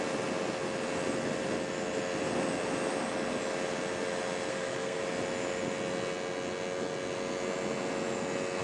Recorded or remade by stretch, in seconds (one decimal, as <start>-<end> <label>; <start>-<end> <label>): 0.0-4.5 recorded; 4.5-5.0 remade; 5.0-8.6 recorded